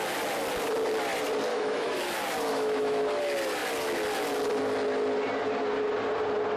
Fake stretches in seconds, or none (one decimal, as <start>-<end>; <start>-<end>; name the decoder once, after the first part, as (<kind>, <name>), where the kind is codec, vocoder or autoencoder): 1.5-2.0 (autoencoder, DAC-VAE); 2.5-3.0